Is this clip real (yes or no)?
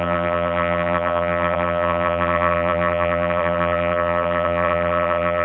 no